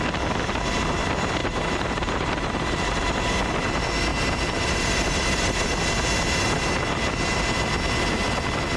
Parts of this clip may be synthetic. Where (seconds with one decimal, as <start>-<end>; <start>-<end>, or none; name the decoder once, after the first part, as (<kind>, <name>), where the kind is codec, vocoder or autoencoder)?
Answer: 1.4-3.3 (vocoder, BigVGAN v2); 4.1-5.8